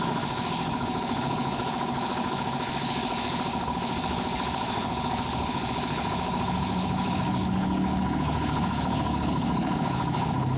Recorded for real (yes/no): no